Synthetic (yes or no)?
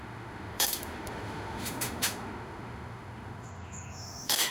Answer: yes